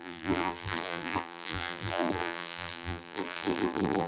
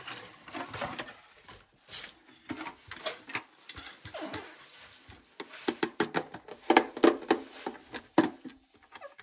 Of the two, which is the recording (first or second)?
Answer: second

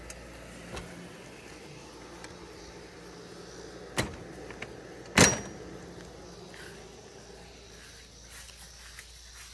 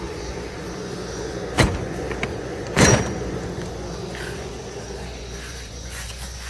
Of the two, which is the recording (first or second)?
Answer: first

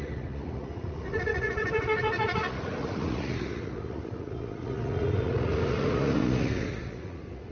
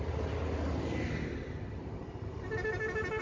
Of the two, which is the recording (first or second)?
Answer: second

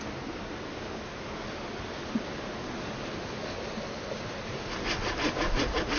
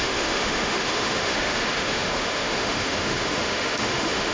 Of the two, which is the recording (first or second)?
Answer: first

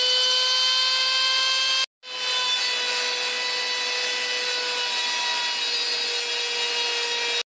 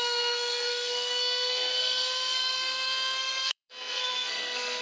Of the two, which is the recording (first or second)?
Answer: first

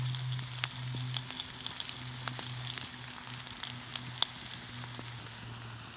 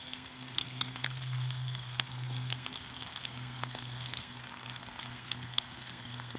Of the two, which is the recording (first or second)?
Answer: first